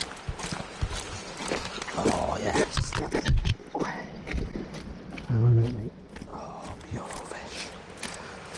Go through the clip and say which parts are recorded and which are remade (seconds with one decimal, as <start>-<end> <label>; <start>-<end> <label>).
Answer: 0.0-8.6 recorded

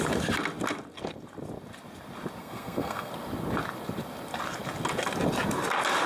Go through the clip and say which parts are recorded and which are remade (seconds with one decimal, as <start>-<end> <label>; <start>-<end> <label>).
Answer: 0.0-2.4 recorded; 2.4-3.1 remade; 3.1-6.1 recorded

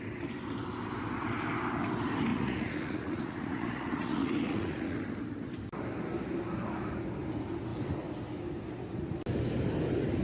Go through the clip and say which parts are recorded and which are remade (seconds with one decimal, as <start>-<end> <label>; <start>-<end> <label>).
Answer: 0.0-2.3 recorded; 2.3-5.0 remade; 5.0-10.2 recorded

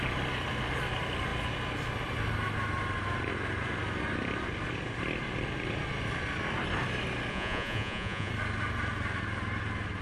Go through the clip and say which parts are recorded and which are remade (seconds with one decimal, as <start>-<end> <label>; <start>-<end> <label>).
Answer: 0.0-7.3 recorded; 7.3-8.3 remade; 8.3-10.0 recorded

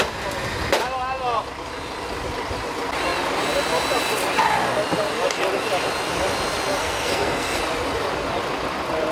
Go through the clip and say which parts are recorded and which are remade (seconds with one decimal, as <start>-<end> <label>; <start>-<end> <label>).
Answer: 0.0-6.8 recorded; 6.8-7.6 remade; 7.6-9.1 recorded

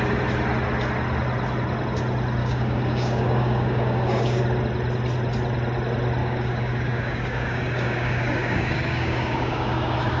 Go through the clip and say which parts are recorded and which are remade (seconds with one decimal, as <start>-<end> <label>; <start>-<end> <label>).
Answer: 0.0-2.4 recorded; 2.4-4.4 remade; 4.4-6.2 recorded; 6.2-10.2 remade